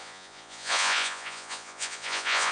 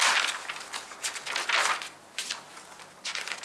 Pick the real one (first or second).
second